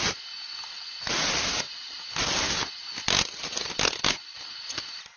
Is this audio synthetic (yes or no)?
no